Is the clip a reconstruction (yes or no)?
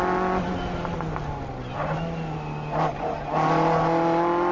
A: no